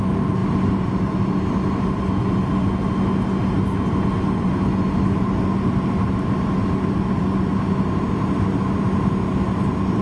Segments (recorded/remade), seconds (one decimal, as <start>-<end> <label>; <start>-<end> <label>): 0.0-10.0 recorded